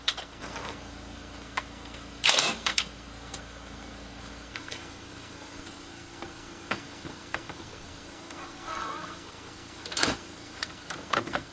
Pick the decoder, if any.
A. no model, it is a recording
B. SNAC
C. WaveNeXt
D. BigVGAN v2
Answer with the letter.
B